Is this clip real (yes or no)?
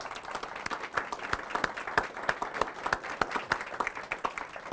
yes